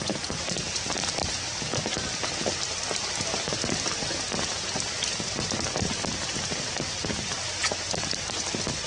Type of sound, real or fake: real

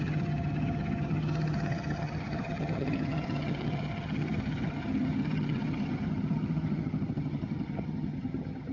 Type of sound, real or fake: fake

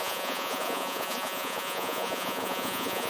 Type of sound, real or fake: fake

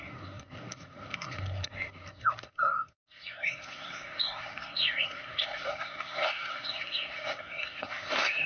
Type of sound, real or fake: fake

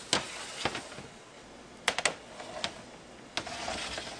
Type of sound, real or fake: real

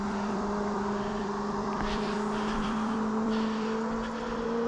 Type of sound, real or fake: fake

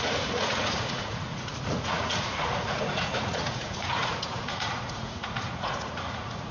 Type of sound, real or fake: fake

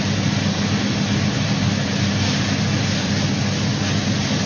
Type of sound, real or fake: real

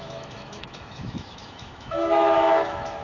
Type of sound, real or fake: fake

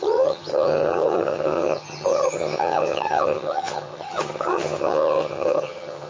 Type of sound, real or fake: fake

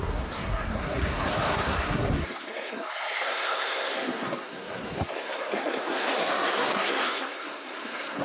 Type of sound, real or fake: fake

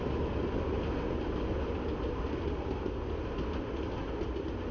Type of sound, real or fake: real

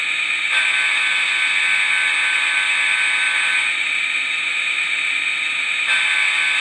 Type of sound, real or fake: real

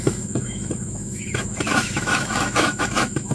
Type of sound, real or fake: fake